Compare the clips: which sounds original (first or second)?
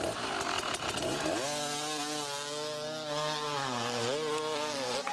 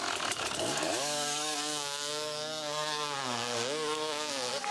first